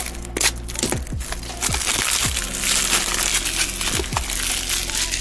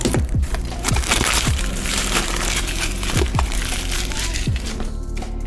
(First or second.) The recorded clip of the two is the first